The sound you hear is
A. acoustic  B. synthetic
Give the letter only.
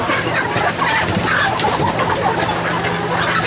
A